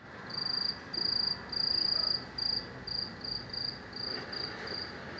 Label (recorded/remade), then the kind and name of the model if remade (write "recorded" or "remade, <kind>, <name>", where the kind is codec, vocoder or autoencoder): recorded